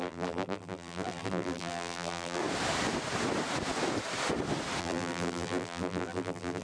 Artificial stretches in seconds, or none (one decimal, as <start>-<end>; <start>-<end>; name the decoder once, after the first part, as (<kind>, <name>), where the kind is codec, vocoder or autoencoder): 0.0-2.4 (vocoder, BigVGAN v2); 4.8-6.6